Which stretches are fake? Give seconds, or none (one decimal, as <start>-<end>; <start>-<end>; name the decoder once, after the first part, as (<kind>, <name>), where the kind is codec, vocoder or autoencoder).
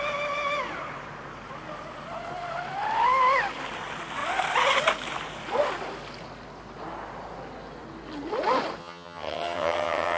8.8-10.2 (vocoder, HiFi-GAN)